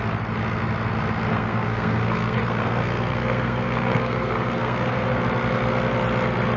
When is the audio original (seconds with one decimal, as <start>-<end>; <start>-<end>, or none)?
0.0-1.3; 5.2-6.6